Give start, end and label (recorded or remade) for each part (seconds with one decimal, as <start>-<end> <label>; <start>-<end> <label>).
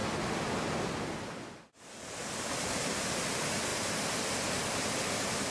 0.0-2.2 recorded; 2.2-3.2 remade; 3.2-5.5 recorded